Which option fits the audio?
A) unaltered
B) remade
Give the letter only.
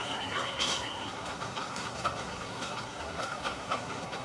B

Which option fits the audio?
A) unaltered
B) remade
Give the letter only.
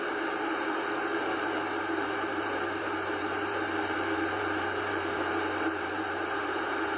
B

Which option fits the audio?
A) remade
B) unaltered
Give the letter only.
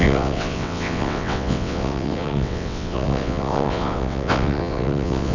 A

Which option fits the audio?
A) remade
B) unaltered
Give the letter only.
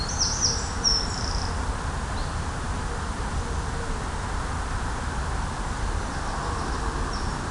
B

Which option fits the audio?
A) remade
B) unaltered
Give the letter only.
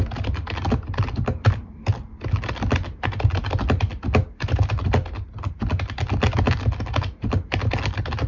B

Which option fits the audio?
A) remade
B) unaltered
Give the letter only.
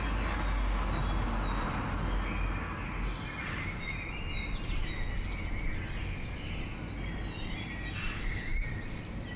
B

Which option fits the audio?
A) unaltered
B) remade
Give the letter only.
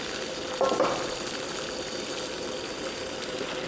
A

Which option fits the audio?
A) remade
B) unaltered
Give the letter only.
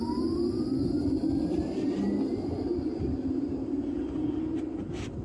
B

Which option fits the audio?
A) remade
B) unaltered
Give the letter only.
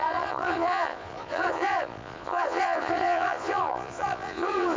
A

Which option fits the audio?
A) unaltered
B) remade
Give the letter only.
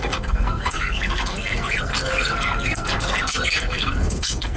B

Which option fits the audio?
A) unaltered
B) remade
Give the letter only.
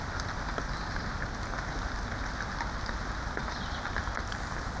A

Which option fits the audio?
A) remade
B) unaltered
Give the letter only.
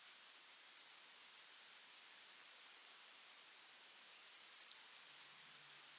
B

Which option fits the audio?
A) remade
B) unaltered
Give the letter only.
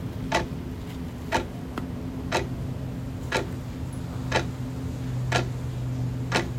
B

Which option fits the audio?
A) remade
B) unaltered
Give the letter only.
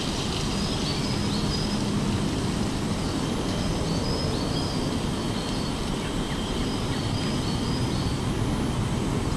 B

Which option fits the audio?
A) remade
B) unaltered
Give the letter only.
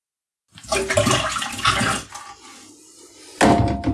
B